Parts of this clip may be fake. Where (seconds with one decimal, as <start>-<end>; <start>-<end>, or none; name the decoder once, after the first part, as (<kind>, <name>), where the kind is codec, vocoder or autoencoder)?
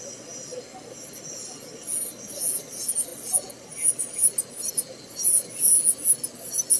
none